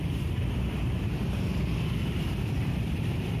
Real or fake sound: fake